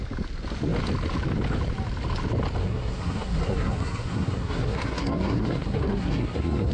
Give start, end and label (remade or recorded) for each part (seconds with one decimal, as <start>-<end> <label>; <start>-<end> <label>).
0.0-2.6 recorded; 2.6-6.7 remade